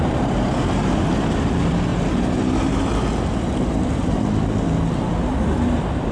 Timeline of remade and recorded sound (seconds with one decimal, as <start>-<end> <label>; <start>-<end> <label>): 0.0-6.1 recorded